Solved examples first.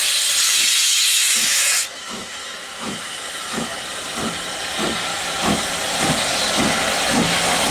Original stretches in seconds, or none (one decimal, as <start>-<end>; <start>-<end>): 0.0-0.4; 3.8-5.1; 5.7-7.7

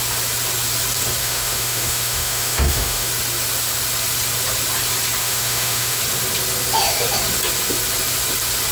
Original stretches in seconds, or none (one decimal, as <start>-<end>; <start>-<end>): 0.0-1.2; 3.1-5.2; 6.0-8.7

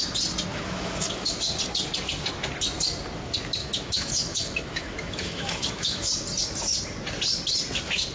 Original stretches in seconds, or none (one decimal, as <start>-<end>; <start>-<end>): 0.0-0.5; 1.3-3.6; 6.1-8.1

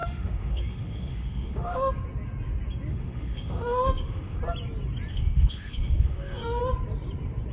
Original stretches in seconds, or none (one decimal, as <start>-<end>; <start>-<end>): 1.9-2.9; 4.4-5.1; 6.6-7.5

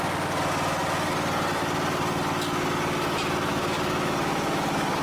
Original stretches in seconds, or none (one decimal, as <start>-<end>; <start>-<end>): 0.0-3.5